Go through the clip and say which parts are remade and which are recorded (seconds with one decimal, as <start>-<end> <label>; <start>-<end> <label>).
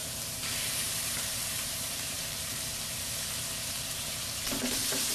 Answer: 0.0-3.1 remade; 3.1-5.1 recorded